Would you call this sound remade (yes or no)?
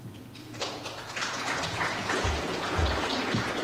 yes